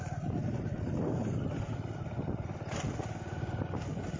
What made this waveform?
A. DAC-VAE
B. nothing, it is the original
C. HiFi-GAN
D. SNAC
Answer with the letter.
B